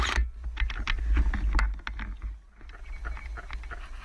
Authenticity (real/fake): real